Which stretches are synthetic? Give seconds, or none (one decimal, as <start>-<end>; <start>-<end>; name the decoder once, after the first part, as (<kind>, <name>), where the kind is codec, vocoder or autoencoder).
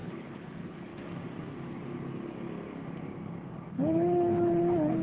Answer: 0.0-0.9 (codec, HILCodec); 3.7-5.0